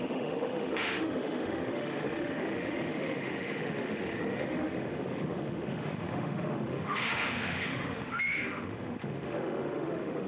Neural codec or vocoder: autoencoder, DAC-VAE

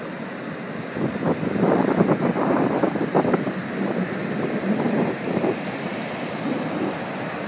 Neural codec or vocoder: none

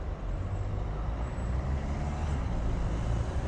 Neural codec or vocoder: none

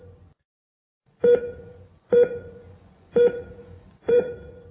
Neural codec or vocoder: vocoder, Vocos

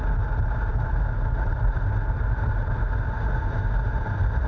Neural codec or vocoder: none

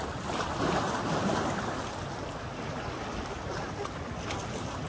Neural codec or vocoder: none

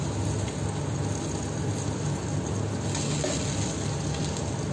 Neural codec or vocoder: none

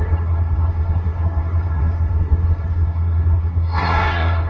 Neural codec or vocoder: codec, SNAC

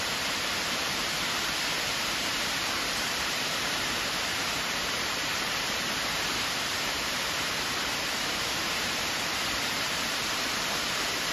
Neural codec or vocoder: vocoder, BigVGAN v2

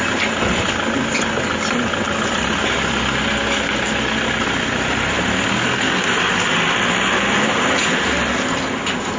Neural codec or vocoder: none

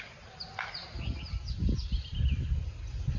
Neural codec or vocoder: none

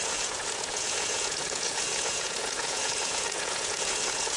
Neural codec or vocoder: vocoder, Vocos